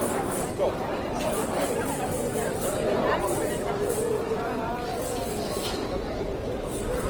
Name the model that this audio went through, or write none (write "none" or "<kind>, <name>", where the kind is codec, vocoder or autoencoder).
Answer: vocoder, BigVGAN v2